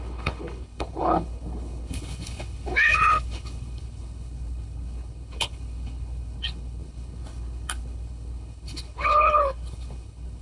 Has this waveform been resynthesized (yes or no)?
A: yes